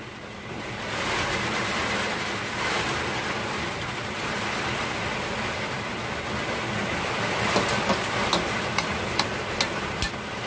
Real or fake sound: real